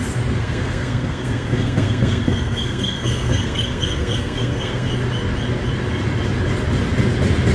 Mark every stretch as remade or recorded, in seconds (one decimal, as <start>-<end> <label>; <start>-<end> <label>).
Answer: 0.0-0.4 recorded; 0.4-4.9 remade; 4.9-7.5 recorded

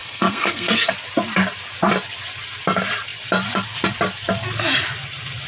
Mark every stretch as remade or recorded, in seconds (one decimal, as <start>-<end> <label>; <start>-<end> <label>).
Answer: 0.0-0.9 remade; 0.9-5.5 recorded

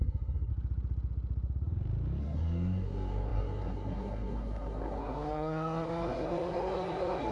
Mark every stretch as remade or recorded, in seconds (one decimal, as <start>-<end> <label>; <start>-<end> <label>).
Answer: 0.0-0.5 remade; 0.5-2.2 recorded; 2.2-7.3 remade